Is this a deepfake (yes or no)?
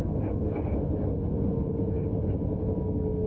no